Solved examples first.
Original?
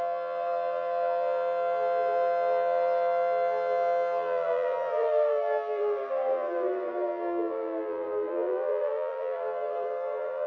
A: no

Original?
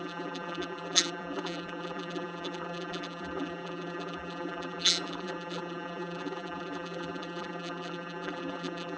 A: no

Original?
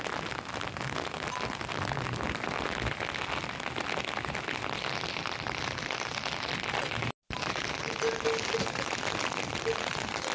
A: yes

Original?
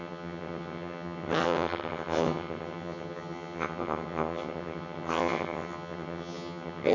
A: no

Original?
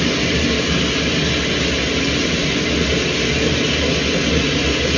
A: yes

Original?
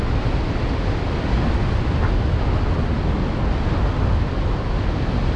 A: yes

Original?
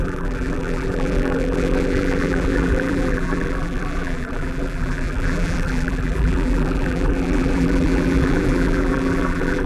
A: no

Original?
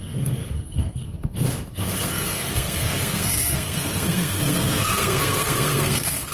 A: no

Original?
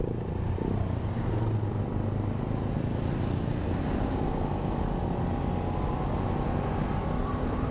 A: yes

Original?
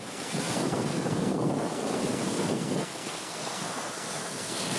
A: no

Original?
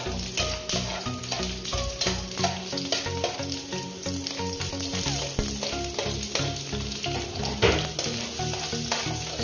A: yes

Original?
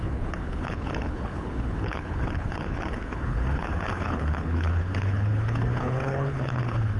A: no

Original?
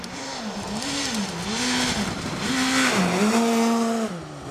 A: yes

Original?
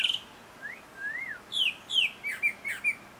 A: yes